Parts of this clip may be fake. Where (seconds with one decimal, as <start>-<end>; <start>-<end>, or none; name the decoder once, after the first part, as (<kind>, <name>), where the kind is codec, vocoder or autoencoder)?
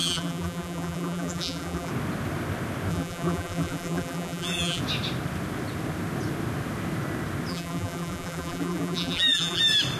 0.0-1.9 (vocoder, BigVGAN v2); 2.9-4.8; 7.5-9.6